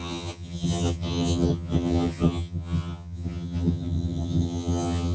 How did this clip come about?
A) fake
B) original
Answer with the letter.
A